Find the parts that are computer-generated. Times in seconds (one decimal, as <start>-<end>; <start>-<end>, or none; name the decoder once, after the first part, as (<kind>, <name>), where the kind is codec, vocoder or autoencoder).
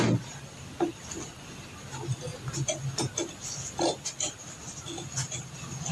none